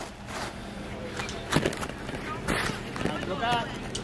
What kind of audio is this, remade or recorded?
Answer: recorded